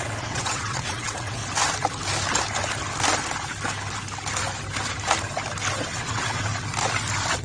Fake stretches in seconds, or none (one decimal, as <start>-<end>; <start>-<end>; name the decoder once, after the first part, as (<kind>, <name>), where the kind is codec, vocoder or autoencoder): 0.0-1.4 (vocoder, WaveNeXt); 5.7-6.5